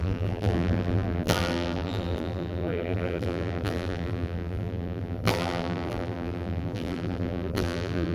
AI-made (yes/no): yes